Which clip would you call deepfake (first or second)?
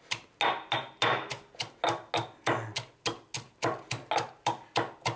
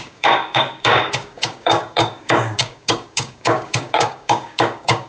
second